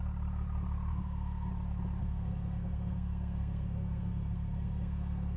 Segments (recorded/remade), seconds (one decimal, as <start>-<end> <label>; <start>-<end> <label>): 0.0-0.9 recorded; 0.9-1.5 remade; 1.5-2.0 recorded; 2.0-5.4 remade